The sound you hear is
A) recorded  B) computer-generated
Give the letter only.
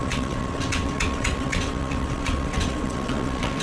B